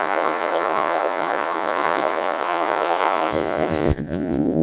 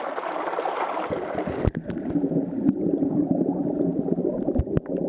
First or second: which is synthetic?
first